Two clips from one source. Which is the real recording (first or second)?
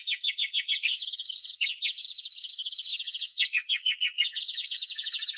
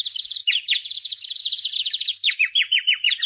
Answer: second